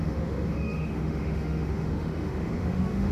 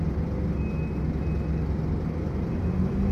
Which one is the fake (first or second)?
first